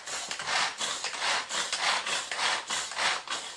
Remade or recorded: recorded